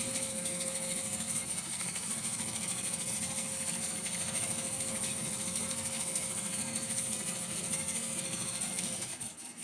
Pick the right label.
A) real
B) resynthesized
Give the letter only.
B